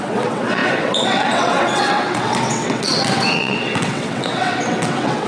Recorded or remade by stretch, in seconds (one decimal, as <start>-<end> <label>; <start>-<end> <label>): 0.0-5.3 remade